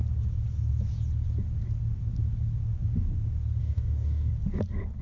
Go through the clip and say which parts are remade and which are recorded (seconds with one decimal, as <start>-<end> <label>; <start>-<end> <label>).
0.0-3.6 recorded; 3.6-4.3 remade; 4.3-5.0 recorded